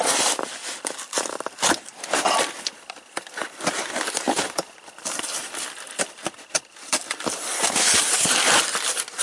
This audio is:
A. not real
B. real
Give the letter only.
B